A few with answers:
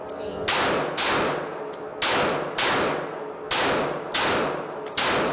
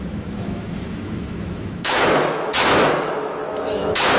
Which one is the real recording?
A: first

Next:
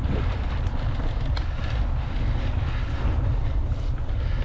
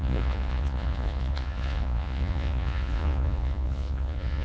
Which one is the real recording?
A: first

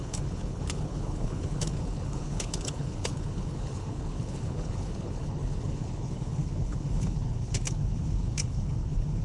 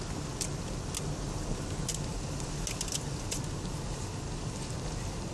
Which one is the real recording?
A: second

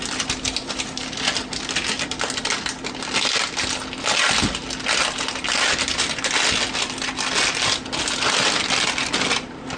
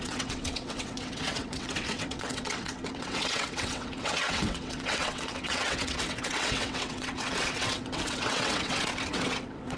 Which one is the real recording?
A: first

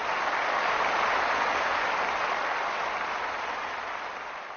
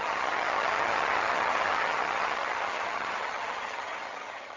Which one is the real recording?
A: first